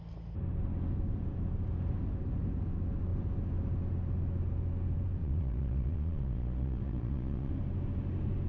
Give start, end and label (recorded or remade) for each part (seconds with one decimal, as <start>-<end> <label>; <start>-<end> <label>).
0.0-5.2 recorded; 5.2-7.5 remade; 7.5-8.5 recorded